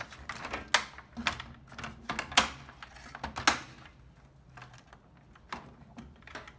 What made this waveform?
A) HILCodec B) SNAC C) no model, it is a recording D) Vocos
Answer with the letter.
C